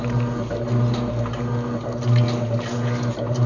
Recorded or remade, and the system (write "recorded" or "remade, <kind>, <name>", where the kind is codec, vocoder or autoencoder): recorded